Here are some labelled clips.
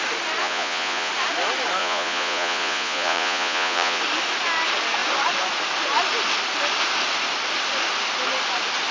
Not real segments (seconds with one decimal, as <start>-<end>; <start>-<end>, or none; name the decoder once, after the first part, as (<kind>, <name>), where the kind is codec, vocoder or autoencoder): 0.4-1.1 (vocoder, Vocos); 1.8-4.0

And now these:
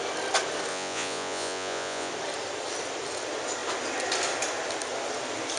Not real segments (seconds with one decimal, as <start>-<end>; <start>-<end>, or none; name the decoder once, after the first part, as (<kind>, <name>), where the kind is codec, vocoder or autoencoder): 0.7-2.1 (vocoder, Vocos)

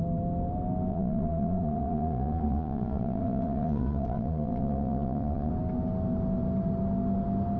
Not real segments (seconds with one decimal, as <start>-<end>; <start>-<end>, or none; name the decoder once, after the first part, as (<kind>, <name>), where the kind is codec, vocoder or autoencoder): 0.9-5.5 (vocoder, Vocos)

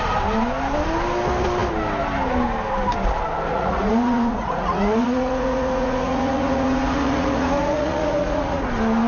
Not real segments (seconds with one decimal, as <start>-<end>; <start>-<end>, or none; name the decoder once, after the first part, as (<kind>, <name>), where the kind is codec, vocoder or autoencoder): 3.5-8.7 (vocoder, Vocos)

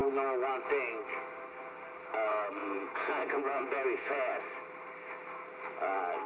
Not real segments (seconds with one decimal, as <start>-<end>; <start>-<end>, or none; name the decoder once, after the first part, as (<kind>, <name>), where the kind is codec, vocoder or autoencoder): 2.6-4.4 (vocoder, Vocos)

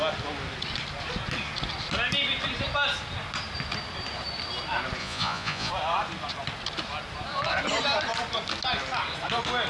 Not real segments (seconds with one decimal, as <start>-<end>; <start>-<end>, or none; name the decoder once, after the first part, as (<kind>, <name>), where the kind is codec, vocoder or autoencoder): 5.0-5.7 (vocoder, Vocos)

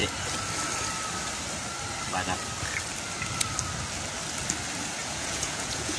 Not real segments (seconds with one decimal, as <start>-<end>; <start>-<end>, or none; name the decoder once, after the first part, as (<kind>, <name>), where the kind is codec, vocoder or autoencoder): 5.0-6.0 (vocoder, Vocos)

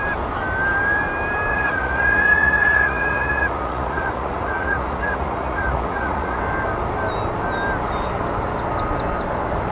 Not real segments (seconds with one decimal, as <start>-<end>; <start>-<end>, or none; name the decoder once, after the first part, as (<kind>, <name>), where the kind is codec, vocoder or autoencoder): 1.5-6.4 (vocoder, Vocos)